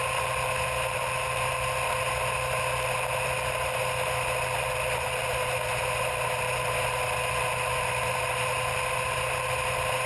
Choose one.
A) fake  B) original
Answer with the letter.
B